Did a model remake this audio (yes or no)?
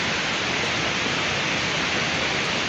no